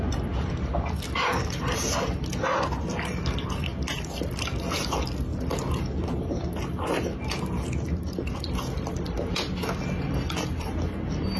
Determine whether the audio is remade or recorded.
recorded